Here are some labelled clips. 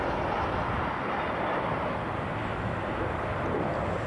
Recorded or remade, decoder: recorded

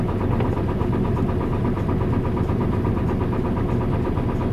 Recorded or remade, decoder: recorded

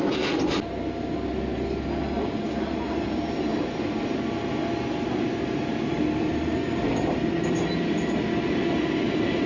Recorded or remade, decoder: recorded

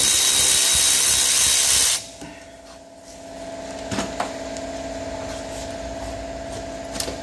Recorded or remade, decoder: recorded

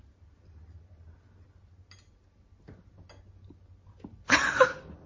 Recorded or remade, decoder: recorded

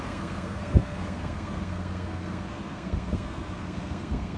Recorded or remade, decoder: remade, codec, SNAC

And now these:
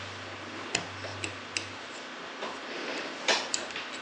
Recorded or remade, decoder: recorded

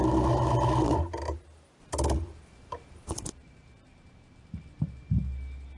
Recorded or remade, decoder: recorded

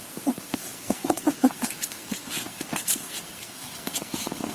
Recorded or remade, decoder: remade, codec, SNAC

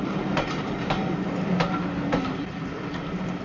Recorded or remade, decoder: recorded